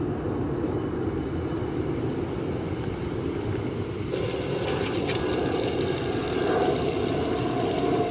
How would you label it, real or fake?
real